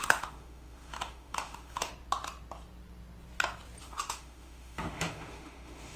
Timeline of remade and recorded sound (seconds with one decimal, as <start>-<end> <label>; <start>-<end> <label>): 0.0-1.9 remade; 1.9-3.8 recorded; 3.8-6.0 remade